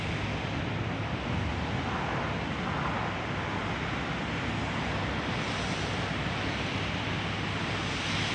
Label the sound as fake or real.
real